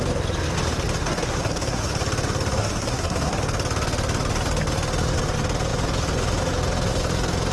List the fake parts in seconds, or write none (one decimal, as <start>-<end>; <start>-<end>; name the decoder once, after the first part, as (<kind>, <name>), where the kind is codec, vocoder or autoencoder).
1.0-1.9 (codec, SNAC); 2.6-3.4